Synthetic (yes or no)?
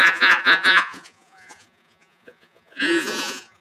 yes